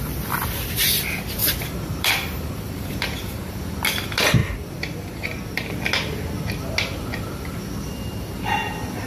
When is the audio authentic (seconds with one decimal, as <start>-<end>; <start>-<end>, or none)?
0.0-1.4; 3.5-4.4; 5.7-9.1